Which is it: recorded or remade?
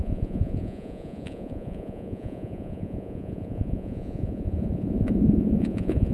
remade